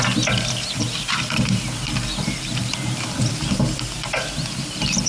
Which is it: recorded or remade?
remade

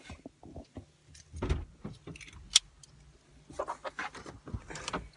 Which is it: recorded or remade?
recorded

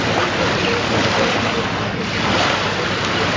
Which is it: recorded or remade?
recorded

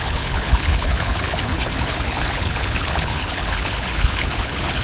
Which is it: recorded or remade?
remade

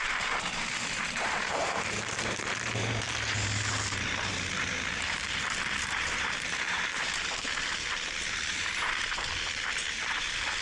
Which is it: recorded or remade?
remade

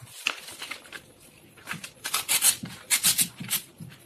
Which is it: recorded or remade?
recorded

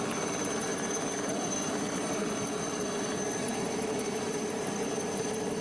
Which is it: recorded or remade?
recorded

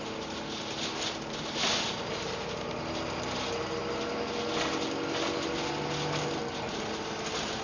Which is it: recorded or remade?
recorded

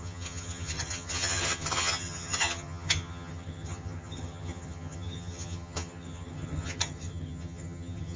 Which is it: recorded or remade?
remade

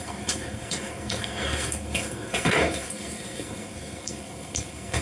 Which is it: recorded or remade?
remade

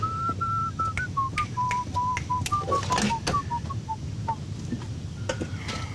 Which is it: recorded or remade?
recorded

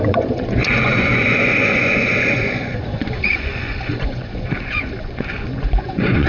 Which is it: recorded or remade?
remade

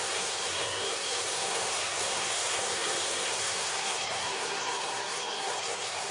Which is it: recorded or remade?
remade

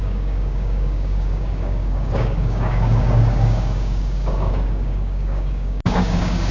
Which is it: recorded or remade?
remade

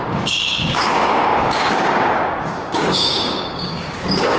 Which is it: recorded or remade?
remade